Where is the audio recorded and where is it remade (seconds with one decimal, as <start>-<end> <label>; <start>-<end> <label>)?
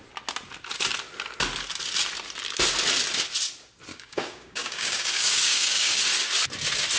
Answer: 0.0-3.9 recorded; 3.9-6.0 remade; 6.0-7.0 recorded